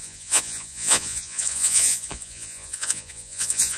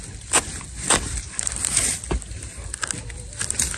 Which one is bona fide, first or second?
second